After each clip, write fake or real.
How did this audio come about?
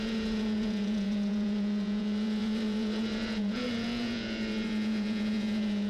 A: fake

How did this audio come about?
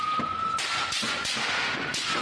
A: fake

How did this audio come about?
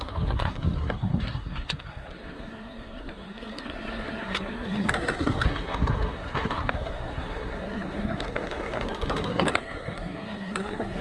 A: fake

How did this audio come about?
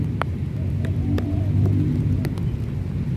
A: real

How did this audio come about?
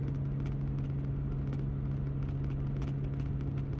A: real